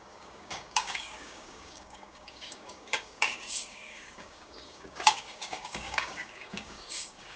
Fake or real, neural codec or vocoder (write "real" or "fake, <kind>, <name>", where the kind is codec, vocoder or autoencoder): fake, codec, DAC